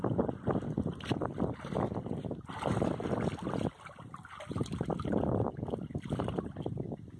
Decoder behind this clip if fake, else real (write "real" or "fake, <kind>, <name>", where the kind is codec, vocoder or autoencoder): real